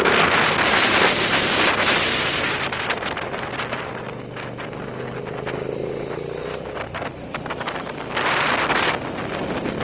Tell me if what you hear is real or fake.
real